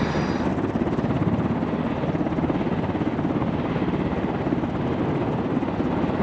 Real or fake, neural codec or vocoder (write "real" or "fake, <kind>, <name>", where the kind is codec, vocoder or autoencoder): real